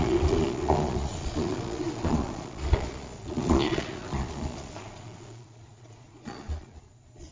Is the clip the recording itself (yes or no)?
no